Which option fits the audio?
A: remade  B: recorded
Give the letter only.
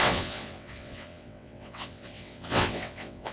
A